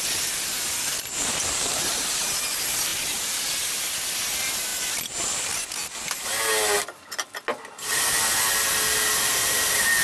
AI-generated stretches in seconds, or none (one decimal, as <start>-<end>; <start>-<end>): 1.2-2.1; 2.9-3.7